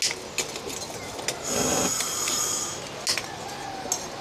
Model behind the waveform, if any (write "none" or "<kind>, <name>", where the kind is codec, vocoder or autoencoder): none